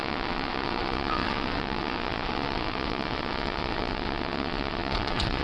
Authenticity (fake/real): fake